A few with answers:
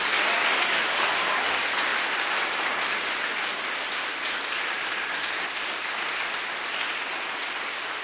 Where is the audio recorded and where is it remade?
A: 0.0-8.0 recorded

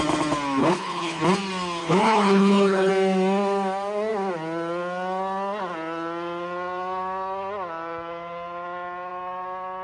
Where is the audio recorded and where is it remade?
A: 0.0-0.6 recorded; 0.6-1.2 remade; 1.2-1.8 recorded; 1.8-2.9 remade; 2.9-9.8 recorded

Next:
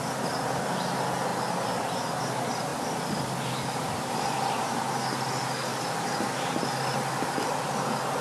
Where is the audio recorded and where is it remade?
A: 0.0-8.2 recorded

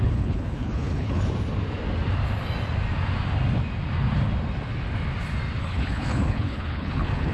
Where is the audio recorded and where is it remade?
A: 0.0-1.2 remade; 1.2-5.6 recorded; 5.6-7.3 remade

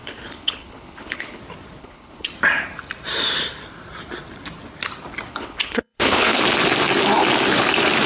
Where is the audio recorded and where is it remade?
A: 0.0-1.4 remade; 1.4-1.8 recorded; 1.8-2.3 remade; 2.3-5.3 recorded; 5.3-6.4 remade; 6.4-8.1 recorded

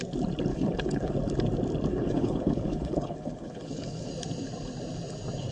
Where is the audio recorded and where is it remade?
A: 0.0-0.5 recorded; 0.5-1.1 remade; 1.1-1.9 recorded; 1.9-4.1 remade; 4.1-5.5 recorded